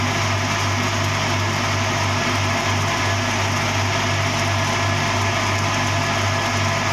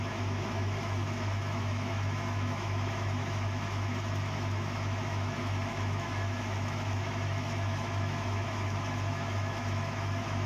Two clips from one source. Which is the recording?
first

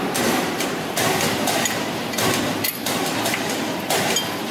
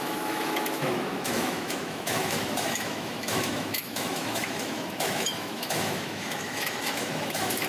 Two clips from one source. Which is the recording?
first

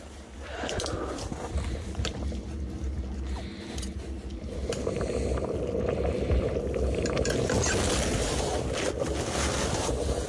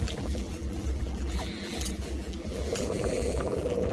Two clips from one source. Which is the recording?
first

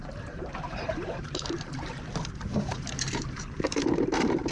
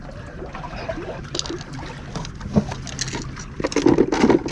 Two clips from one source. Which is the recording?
second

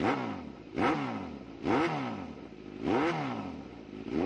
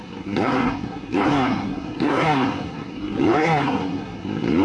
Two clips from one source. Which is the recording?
first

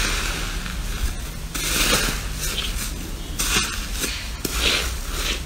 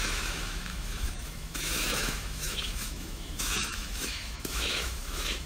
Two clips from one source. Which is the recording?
first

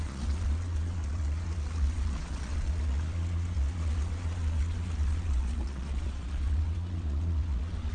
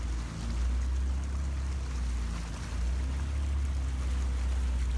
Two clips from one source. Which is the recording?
second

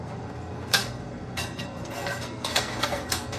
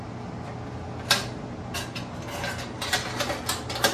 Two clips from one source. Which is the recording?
second